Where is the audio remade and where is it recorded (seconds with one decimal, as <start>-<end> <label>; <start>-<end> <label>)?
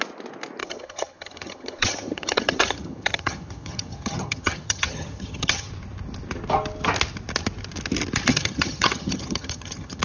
0.0-0.6 recorded; 0.6-5.7 remade; 5.7-8.3 recorded; 8.3-10.0 remade